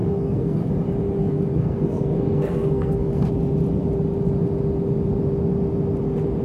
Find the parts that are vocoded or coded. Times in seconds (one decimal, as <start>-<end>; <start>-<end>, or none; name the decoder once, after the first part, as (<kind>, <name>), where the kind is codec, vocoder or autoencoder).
0.0-0.7 (codec, SNAC); 1.2-3.3